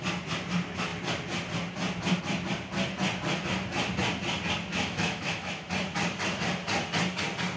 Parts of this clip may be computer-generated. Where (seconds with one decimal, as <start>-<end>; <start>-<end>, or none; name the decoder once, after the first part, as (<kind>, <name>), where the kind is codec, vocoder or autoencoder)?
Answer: 4.7-5.7 (autoencoder, DAC-VAE)